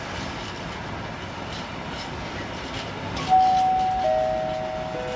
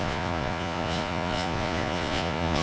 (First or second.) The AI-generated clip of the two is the second